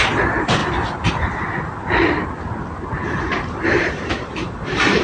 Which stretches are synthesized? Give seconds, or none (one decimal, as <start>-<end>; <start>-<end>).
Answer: 0.0-0.6; 3.2-5.0